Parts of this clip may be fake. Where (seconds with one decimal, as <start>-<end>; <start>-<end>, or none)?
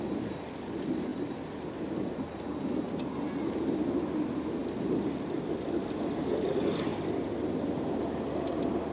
none